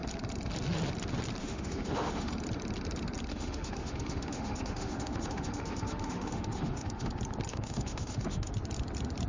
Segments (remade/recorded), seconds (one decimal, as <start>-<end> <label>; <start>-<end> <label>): 0.0-1.4 recorded; 1.4-2.3 remade; 2.3-3.3 recorded; 3.3-7.1 remade; 7.1-7.5 recorded; 7.5-8.5 remade; 8.5-9.3 recorded